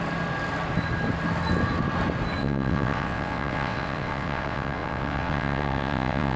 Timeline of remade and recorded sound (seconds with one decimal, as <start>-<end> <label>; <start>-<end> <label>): 0.0-2.4 recorded; 2.4-6.4 remade